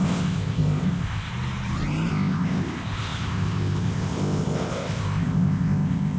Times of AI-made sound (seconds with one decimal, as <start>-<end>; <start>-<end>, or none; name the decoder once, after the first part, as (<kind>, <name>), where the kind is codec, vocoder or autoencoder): 0.0-1.3 (codec, ZipCodec); 2.1-6.2